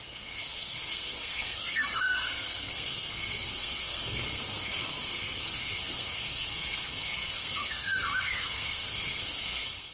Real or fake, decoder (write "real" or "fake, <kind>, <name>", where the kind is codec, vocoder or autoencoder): fake, codec, SNAC